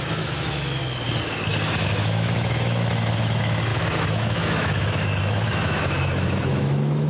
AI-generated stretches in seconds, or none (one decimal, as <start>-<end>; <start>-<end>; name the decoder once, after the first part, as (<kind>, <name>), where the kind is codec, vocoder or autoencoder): 0.0-0.8 (autoencoder, DAC-VAE); 1.8-7.1